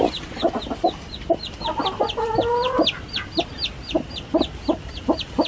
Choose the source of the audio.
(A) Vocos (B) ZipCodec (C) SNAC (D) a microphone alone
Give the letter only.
D